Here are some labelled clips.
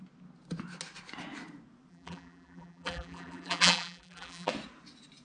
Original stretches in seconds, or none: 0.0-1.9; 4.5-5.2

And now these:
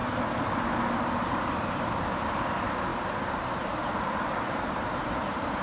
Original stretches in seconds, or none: 0.0-0.8; 2.9-3.4; 3.8-4.9